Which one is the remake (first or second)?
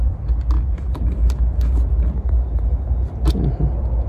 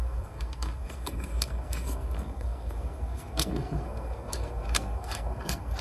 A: second